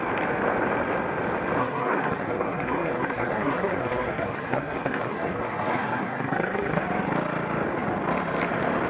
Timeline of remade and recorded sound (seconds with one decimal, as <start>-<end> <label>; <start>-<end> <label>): 0.0-1.6 recorded; 1.6-6.8 remade; 6.8-8.9 recorded